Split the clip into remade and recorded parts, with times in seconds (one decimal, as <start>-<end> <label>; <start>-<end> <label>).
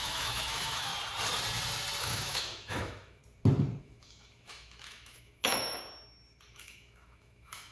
0.0-0.9 remade; 0.9-2.0 recorded; 2.0-3.2 remade; 3.2-3.8 recorded; 3.8-5.8 remade; 5.8-6.5 recorded; 6.5-7.7 remade